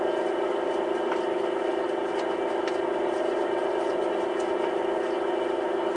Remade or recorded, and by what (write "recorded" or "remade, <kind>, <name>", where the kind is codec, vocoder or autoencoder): recorded